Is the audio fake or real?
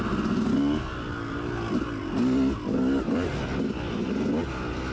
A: real